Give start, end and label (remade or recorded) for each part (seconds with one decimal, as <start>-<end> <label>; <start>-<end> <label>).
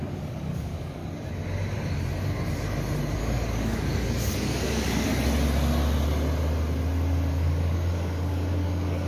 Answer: 0.0-1.0 remade; 1.0-3.2 recorded; 3.2-5.1 remade; 5.1-7.3 recorded; 7.3-9.1 remade